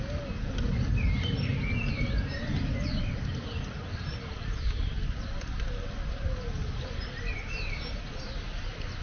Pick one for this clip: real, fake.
real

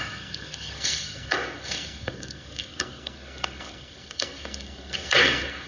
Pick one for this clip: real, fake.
fake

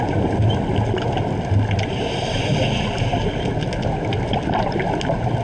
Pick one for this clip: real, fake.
real